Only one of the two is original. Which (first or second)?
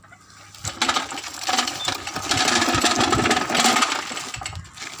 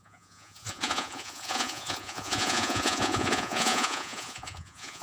first